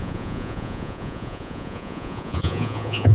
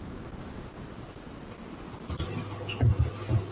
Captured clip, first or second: second